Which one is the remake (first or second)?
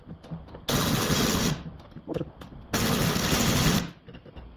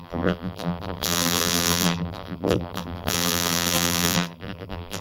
second